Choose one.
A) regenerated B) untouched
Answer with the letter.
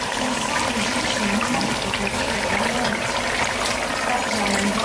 B